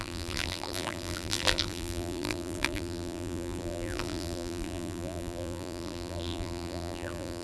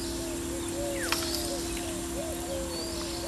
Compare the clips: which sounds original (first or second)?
second